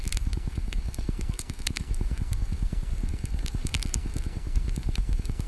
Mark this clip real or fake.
fake